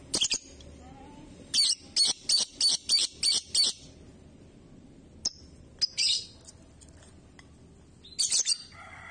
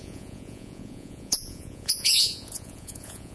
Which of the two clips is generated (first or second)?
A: second